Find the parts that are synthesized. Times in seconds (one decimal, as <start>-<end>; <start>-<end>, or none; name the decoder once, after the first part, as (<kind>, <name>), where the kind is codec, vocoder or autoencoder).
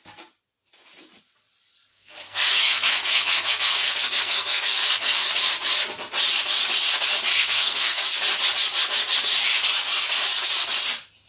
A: 1.9-5.3 (codec, SNAC); 7.4-8.0